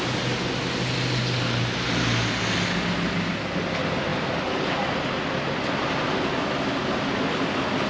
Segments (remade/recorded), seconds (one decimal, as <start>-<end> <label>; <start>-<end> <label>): 0.0-7.9 recorded